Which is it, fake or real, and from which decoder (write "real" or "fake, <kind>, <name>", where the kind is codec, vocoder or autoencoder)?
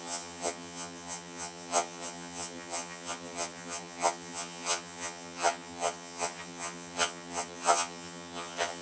fake, vocoder, HiFi-GAN